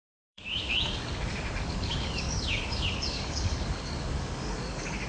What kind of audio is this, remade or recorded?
remade